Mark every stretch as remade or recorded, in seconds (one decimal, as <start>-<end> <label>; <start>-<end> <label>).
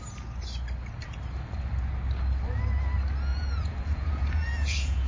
0.0-3.3 recorded; 3.3-5.1 remade